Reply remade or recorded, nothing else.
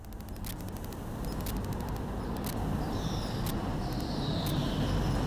recorded